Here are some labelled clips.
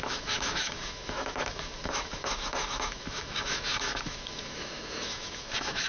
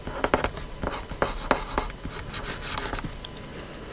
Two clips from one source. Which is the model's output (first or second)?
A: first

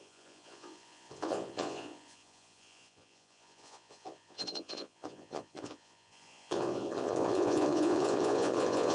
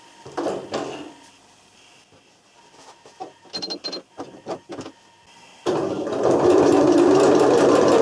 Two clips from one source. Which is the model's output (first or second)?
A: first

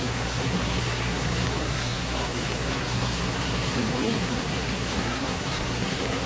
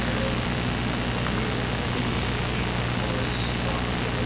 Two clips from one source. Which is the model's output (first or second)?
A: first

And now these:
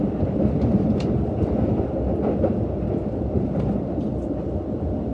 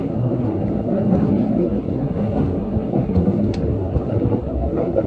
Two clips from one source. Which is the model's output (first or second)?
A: second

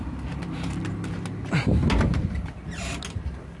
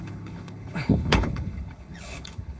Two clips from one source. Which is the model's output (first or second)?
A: second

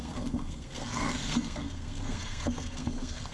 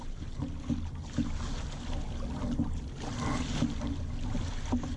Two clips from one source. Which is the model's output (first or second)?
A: first